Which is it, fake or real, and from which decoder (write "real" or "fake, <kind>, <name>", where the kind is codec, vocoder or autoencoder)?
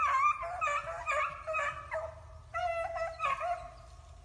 real